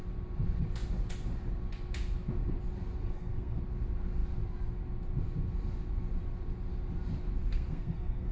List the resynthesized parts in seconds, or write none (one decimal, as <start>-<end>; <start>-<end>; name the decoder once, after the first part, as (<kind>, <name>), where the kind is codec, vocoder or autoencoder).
3.0-3.6 (codec, SNAC); 7.4-8.3